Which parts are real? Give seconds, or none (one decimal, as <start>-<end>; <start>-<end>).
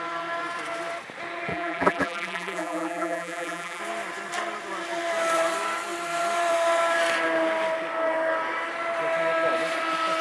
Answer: 0.0-1.5; 3.8-10.2